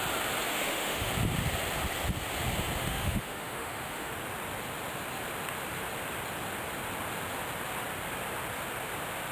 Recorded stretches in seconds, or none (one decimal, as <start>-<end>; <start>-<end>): 0.0-0.5; 1.1-2.8; 4.1-9.3